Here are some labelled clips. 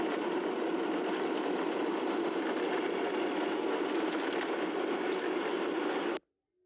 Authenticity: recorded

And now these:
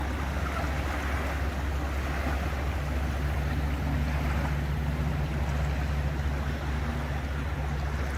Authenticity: recorded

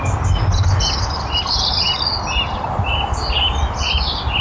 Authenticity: recorded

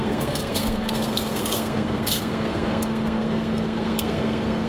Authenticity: remade